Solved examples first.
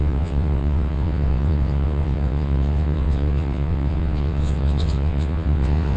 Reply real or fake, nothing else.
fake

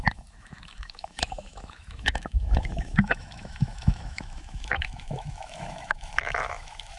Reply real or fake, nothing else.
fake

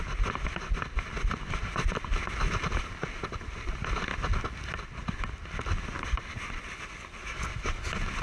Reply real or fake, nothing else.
real